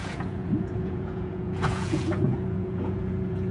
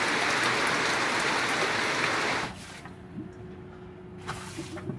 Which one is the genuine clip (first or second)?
second